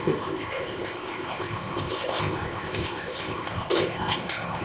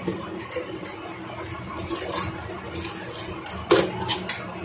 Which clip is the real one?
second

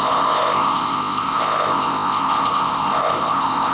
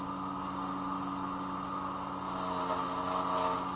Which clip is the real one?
second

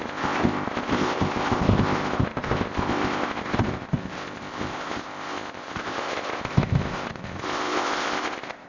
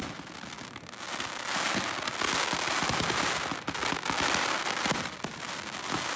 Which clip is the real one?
second